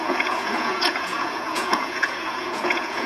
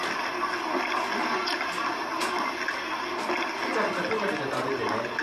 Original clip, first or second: second